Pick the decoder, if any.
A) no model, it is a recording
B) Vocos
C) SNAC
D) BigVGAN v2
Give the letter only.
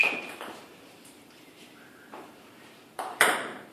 D